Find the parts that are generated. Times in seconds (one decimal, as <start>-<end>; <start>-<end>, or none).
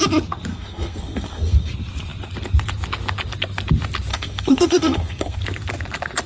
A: 0.5-1.7; 4.1-5.4